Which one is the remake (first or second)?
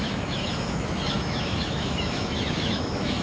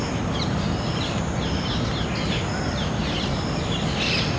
first